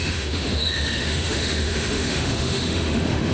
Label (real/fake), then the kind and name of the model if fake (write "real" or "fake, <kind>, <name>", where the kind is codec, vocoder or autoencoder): fake, autoencoder, DAC-VAE